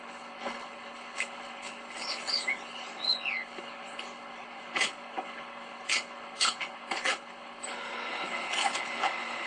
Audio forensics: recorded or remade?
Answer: remade